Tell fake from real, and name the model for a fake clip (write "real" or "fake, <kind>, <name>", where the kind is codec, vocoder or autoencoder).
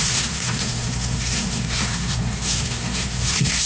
fake, codec, SNAC